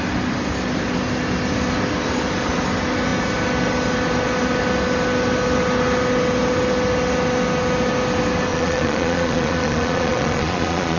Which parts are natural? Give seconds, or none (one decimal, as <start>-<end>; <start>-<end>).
0.0-8.5